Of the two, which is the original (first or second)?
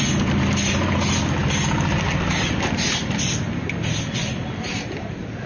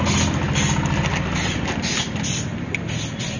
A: second